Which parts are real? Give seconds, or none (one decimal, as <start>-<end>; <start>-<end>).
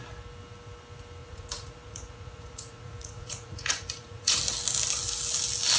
0.0-1.2; 4.4-5.8